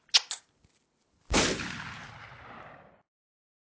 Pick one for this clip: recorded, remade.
recorded